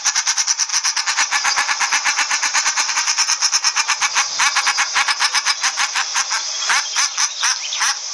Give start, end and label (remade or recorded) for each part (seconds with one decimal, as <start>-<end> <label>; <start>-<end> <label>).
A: 0.0-3.4 remade; 3.4-5.6 recorded; 5.6-8.1 remade